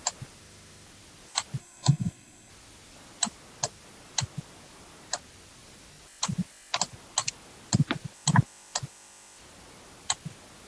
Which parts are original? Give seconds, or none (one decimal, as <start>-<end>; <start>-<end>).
0.0-1.6; 2.5-10.7